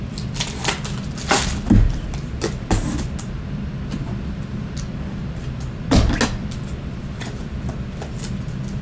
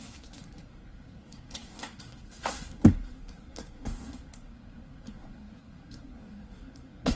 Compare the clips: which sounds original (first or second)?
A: first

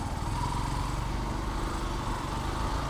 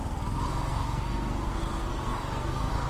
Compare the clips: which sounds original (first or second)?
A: first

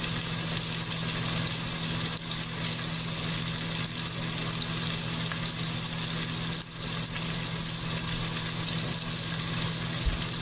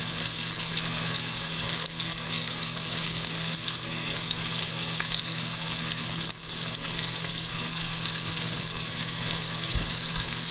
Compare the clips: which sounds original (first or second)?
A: first